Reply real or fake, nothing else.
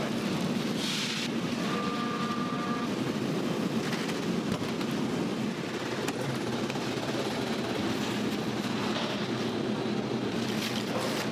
real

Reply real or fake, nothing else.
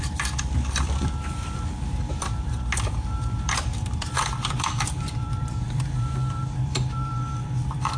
fake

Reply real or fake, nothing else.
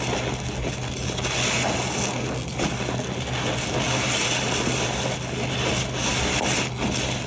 real